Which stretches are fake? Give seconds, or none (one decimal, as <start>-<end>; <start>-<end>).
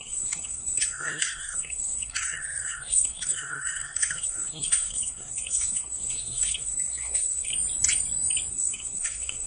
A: 0.0-7.5; 8.5-9.5